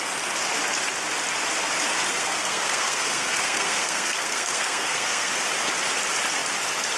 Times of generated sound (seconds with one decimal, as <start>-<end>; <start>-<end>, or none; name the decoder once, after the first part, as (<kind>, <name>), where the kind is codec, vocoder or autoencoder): 2.1-5.3 (codec, SNAC)